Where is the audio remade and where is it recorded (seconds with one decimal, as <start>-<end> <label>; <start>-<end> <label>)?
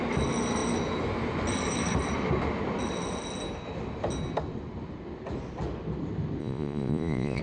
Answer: 0.0-6.4 recorded; 6.4-7.4 remade